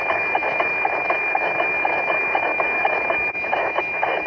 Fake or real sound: fake